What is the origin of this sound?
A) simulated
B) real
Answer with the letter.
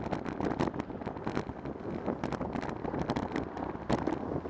B